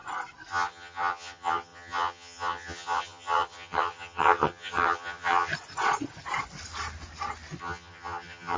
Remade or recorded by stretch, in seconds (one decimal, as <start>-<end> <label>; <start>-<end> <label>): 0.0-0.5 recorded; 0.5-5.5 remade; 5.5-7.6 recorded; 7.6-8.6 remade